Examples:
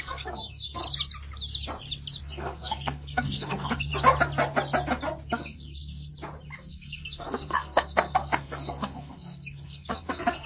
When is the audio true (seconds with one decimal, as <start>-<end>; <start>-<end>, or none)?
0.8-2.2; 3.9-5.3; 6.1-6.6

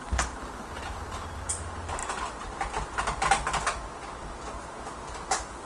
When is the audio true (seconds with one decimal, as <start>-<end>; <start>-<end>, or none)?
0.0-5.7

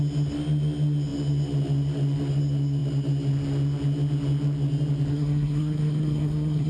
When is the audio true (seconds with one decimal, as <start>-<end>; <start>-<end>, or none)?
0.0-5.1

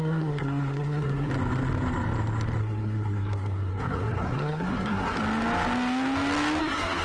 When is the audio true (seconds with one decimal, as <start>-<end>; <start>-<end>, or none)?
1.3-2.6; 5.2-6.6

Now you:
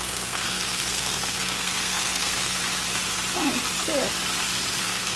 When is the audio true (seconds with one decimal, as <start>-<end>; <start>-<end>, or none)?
2.6-4.8

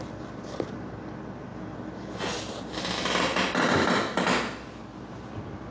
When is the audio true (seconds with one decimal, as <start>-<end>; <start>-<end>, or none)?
0.0-5.7